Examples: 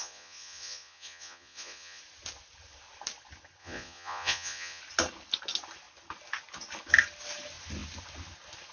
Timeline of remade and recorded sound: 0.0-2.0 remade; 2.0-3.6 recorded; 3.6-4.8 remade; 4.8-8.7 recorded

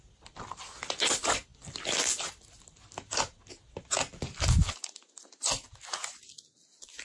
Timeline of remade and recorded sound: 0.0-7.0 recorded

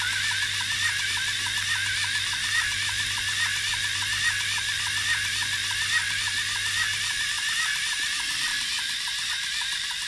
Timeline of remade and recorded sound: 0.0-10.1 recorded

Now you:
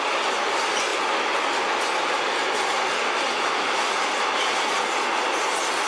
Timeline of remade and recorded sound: 0.0-5.9 recorded